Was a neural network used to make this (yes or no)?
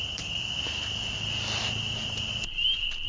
no